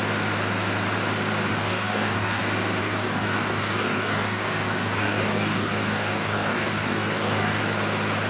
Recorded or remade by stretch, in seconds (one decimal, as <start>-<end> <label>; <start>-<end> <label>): 0.0-1.5 recorded; 1.5-2.4 remade; 2.4-2.8 recorded; 2.8-7.6 remade; 7.6-8.3 recorded